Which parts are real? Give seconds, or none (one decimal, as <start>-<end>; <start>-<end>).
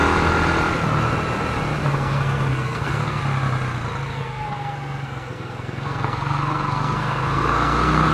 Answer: 0.0-1.8; 3.2-4.1